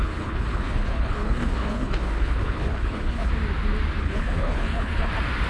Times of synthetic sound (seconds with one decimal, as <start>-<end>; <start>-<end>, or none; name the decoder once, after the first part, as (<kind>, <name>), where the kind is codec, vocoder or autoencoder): 0.0-3.3 (codec, HILCodec); 4.0-5.1